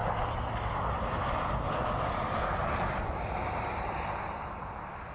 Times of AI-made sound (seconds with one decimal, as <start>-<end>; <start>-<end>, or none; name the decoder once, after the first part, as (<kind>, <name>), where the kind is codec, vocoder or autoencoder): none